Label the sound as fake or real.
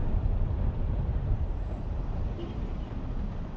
fake